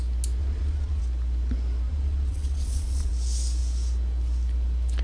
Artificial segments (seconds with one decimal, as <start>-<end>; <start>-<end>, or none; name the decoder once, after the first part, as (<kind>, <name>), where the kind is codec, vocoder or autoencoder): 0.4-1.0 (vocoder, Vocos); 1.9-3.1